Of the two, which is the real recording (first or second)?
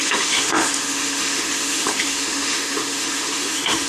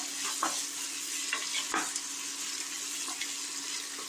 second